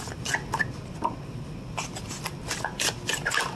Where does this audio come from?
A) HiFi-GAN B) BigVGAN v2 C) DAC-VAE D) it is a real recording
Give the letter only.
D